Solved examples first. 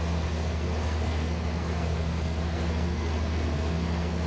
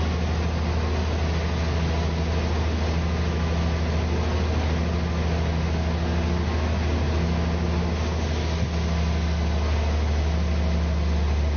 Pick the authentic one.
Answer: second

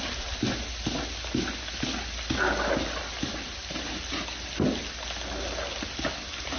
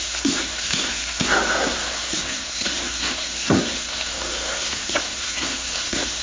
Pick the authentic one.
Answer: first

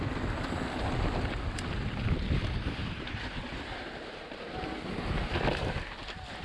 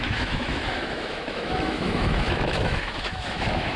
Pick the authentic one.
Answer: first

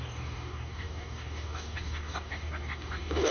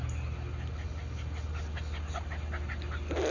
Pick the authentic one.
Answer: second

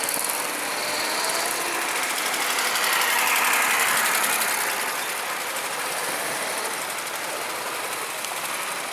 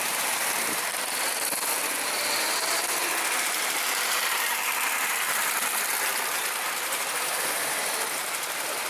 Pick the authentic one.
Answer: first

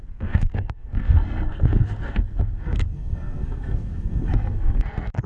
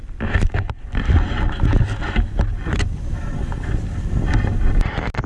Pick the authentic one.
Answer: second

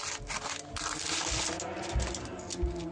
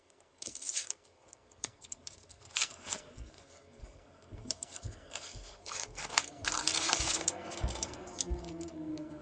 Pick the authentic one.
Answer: first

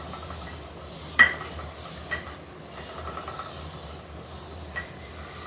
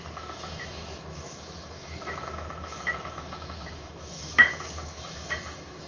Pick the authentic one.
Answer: first